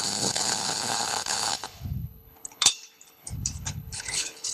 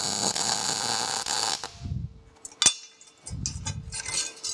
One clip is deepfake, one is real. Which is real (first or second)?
second